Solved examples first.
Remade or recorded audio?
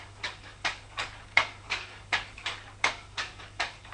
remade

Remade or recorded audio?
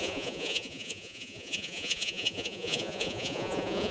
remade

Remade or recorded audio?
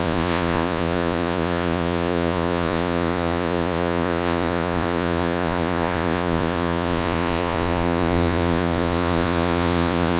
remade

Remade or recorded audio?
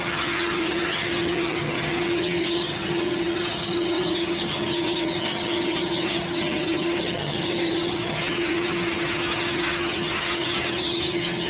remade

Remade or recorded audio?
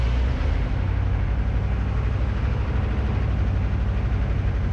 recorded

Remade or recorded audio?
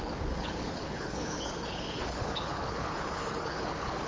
remade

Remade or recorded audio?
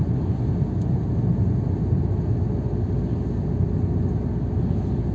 recorded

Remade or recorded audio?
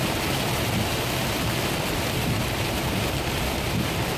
remade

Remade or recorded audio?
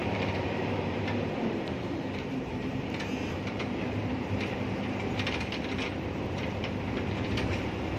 remade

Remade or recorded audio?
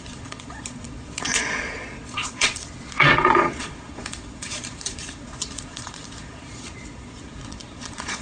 remade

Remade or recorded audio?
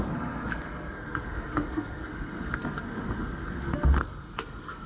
remade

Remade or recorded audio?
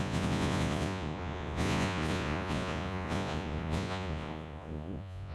remade